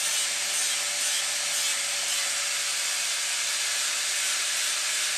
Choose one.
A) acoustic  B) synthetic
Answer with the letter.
A